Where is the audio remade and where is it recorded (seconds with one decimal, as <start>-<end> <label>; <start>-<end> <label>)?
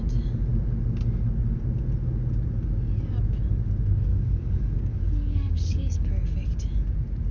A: 0.0-4.1 recorded; 4.1-6.1 remade; 6.1-7.3 recorded